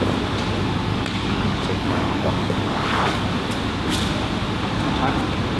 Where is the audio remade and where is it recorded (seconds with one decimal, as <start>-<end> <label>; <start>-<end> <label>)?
0.0-0.9 recorded; 0.9-3.3 remade; 3.3-5.6 recorded